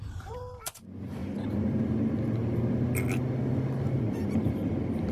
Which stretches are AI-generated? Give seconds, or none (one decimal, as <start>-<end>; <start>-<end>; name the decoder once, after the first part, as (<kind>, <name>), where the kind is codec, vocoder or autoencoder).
0.0-1.2 (vocoder, BigVGAN v2); 4.0-5.1